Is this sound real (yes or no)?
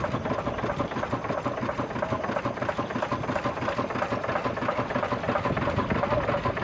yes